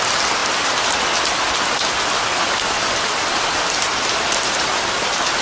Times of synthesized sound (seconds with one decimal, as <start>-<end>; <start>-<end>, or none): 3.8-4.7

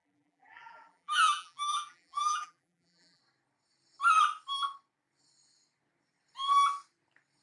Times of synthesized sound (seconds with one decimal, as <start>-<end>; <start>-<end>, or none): 0.0-3.2

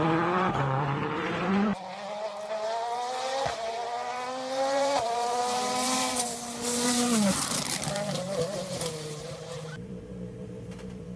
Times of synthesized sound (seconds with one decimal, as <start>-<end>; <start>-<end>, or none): 0.0-1.7; 2.5-11.2

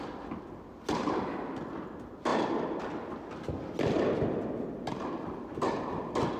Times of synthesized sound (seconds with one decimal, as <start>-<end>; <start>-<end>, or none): none